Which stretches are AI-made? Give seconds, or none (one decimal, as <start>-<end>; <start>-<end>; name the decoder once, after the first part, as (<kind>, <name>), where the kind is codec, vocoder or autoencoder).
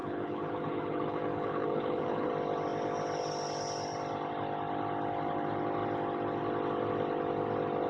0.0-2.3 (codec, HILCodec)